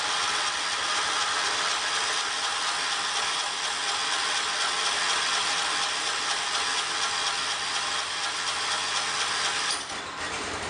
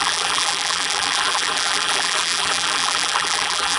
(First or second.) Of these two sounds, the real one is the first